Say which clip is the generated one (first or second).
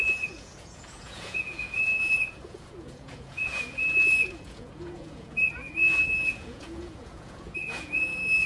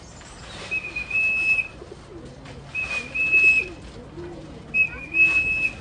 first